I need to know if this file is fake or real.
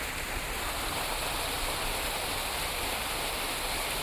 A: real